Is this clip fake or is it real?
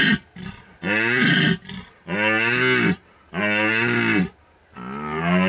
real